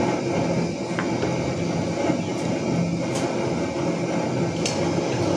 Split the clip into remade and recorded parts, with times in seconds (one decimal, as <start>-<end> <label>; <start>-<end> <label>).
0.0-5.4 recorded